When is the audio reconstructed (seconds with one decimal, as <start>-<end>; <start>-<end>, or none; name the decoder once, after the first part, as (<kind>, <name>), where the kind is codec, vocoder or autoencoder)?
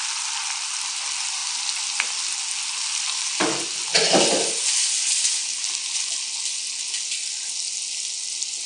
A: none